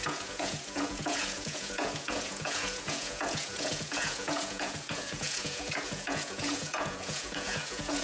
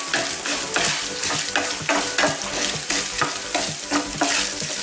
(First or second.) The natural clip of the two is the second